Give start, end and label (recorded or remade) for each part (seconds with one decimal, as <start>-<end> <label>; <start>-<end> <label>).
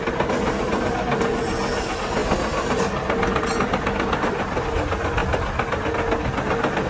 0.0-6.9 recorded